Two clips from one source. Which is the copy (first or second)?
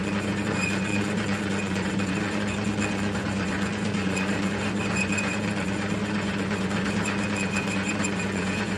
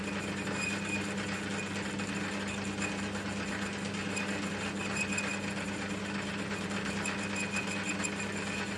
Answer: first